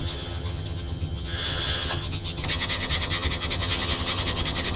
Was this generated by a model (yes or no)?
yes